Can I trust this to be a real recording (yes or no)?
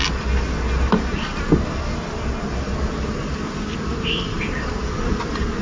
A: yes